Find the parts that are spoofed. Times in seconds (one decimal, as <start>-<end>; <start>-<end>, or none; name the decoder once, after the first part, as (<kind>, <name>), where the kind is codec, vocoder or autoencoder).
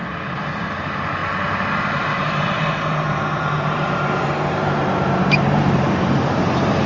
0.0-1.2 (vocoder, BigVGAN v2); 1.9-6.9